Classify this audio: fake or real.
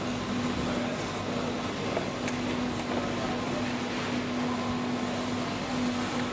real